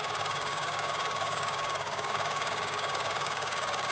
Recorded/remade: remade